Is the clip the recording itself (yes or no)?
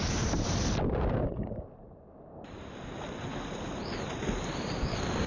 yes